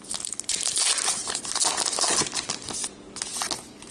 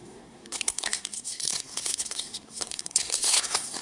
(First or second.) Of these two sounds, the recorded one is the first